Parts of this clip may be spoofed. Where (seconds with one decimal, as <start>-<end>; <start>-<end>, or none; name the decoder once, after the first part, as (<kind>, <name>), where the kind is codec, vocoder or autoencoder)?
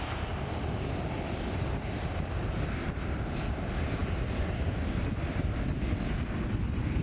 none